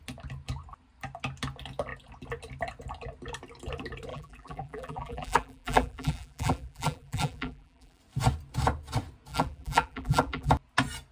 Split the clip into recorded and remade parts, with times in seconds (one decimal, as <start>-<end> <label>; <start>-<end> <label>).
0.0-4.1 recorded; 4.1-8.0 remade; 8.0-9.3 recorded; 9.3-10.5 remade; 10.5-11.1 recorded